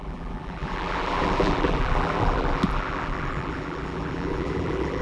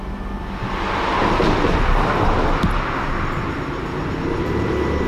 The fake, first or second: first